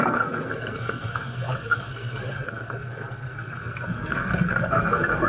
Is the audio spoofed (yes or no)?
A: yes